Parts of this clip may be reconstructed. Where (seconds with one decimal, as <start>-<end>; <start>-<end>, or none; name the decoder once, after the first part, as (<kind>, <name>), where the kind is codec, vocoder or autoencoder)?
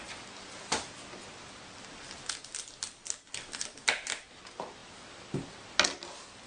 none